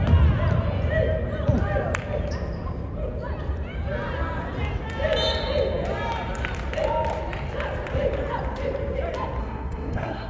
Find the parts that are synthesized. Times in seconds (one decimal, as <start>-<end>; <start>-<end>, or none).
9.4-10.3